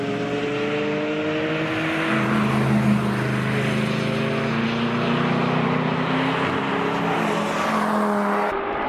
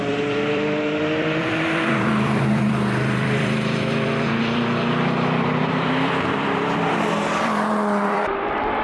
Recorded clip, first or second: first